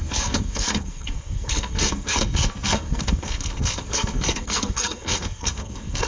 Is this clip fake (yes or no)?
yes